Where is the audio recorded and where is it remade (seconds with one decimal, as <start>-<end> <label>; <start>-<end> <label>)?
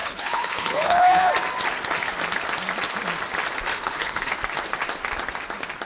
0.0-1.3 remade; 1.3-3.7 recorded; 3.7-4.3 remade; 4.3-5.8 recorded